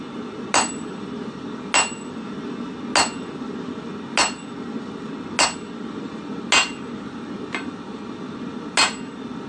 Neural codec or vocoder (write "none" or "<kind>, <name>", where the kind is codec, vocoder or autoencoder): none